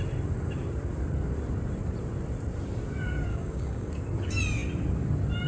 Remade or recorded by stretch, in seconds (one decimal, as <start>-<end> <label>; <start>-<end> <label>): 0.0-3.3 recorded; 3.3-3.9 remade; 3.9-5.5 recorded